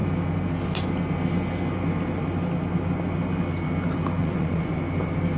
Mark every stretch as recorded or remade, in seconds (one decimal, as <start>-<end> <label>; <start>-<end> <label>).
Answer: 0.0-4.2 recorded; 4.2-4.8 remade; 4.8-5.4 recorded